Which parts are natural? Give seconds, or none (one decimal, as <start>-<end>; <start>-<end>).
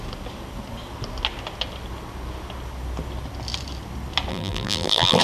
0.0-4.3